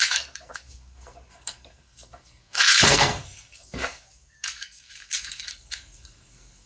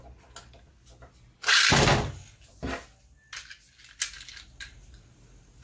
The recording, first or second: second